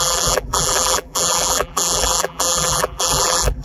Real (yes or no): no